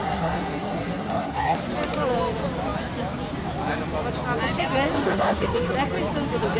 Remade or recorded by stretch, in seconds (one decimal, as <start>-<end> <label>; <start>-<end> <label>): 0.0-1.6 remade; 1.6-4.9 recorded; 4.9-5.7 remade; 5.7-6.6 recorded